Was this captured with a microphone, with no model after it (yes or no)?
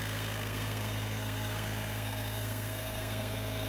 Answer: no